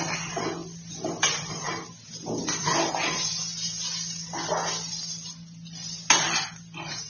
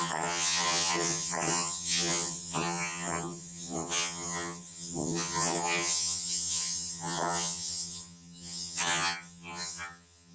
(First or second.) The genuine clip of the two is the first